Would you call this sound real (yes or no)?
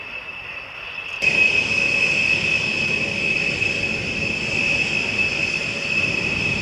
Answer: yes